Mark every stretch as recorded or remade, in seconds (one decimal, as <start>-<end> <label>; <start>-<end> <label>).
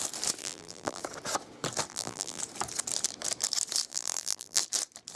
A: 0.0-0.4 recorded; 0.4-1.0 remade; 1.0-1.9 recorded; 1.9-2.4 remade; 2.4-3.9 recorded; 3.9-4.6 remade; 4.6-5.2 recorded